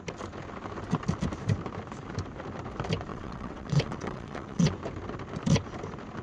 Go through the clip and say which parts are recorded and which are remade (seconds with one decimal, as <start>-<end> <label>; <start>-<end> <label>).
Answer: 0.0-3.1 recorded; 3.1-4.7 remade; 4.7-6.2 recorded